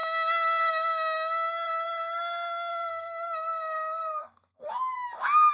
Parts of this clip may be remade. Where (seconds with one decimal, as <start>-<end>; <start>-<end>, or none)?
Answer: 2.7-4.7